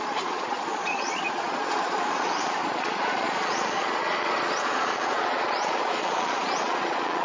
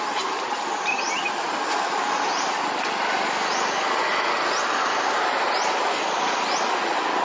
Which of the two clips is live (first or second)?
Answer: second